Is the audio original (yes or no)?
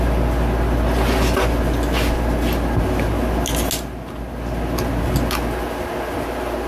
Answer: yes